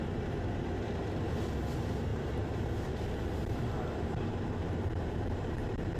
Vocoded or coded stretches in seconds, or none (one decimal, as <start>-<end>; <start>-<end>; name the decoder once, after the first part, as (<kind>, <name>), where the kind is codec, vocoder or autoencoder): 2.1-6.0 (vocoder, BigVGAN v2)